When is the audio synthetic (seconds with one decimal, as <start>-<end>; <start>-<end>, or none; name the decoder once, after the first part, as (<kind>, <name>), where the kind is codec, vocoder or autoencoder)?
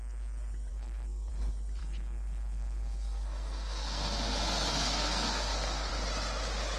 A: 0.7-1.3 (codec, SNAC); 1.8-5.9